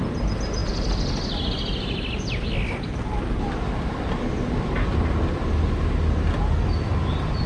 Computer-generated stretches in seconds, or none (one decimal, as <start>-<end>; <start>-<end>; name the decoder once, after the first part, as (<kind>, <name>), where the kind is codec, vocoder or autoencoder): none